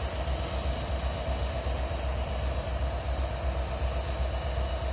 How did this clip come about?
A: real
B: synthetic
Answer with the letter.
A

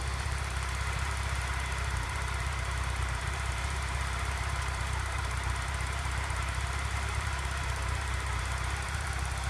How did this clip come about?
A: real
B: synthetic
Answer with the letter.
B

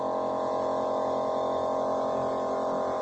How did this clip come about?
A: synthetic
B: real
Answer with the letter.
B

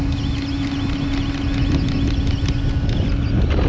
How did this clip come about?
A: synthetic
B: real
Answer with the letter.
B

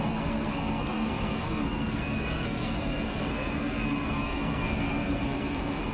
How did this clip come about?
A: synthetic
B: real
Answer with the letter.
A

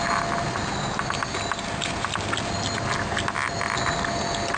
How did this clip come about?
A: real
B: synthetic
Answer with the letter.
A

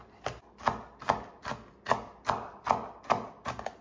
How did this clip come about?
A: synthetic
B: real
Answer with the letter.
B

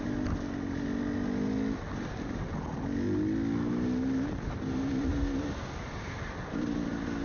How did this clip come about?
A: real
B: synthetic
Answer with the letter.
A